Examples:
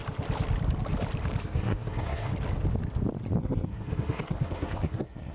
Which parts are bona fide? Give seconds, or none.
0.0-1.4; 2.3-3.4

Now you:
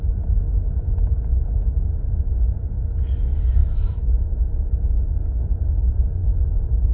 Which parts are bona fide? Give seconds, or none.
0.0-3.6; 4.4-6.2

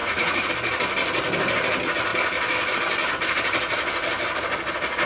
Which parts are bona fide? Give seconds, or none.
0.5-5.1

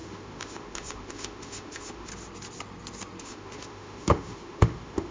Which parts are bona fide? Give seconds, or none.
2.1-3.2

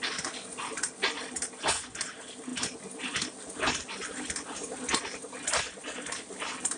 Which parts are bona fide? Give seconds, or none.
0.0-6.8

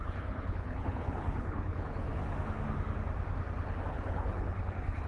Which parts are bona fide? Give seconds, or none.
2.1-3.9

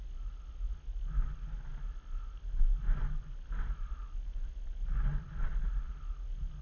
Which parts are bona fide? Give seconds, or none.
0.0-6.6

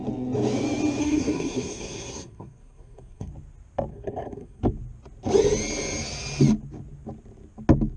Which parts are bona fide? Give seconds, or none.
0.0-1.0; 3.3-3.9; 4.6-8.0